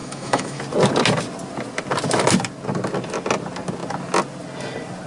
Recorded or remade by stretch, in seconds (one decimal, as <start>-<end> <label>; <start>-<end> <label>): 0.0-0.6 remade; 0.6-5.1 recorded